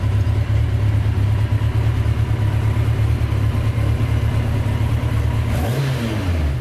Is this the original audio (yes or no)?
yes